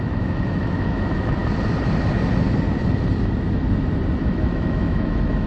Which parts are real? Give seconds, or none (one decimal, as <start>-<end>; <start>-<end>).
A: 1.4-4.2